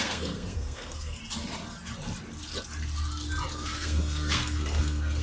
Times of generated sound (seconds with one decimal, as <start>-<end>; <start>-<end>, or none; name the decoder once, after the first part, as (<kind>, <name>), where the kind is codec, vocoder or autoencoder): 0.0-1.2 (codec, SNAC); 3.5-5.2